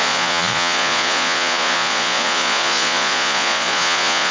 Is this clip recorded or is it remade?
remade